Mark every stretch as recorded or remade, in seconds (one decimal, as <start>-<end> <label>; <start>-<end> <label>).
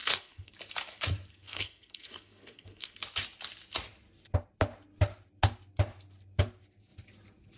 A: 0.0-0.5 remade; 0.5-1.3 recorded; 1.3-3.0 remade; 3.0-7.6 recorded